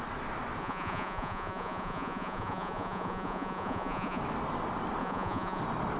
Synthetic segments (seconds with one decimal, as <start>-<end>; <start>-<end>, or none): 0.6-4.2; 5.0-5.6